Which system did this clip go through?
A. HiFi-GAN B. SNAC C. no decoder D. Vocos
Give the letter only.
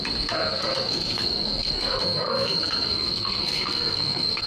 B